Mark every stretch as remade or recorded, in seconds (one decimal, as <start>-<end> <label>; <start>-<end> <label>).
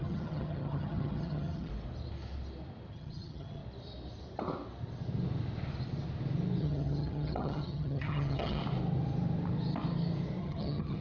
0.0-1.7 remade; 1.7-2.9 recorded; 2.9-3.6 remade; 3.6-6.6 recorded; 6.6-8.6 remade; 8.6-10.4 recorded; 10.4-11.0 remade